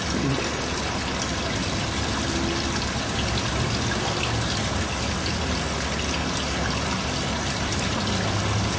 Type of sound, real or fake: real